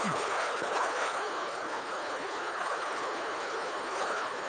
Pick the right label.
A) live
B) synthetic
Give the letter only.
B